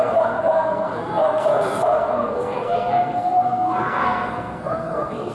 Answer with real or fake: fake